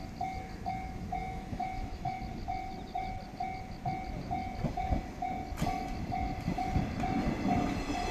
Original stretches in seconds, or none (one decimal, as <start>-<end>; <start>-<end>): 0.0-1.2; 2.2-8.1